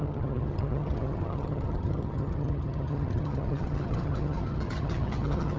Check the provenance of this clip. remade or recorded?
remade